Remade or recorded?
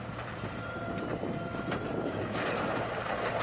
remade